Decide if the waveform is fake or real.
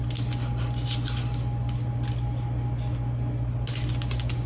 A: real